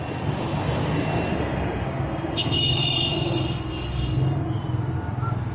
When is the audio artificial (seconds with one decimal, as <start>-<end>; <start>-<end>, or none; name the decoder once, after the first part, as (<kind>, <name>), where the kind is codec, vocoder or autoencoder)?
1.3-4.6 (codec, DAC)